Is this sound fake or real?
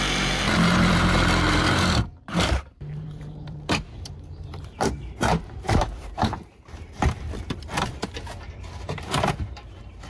fake